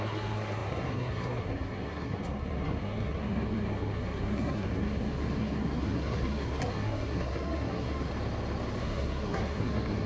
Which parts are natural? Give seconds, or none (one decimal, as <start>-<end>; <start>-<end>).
8.1-8.8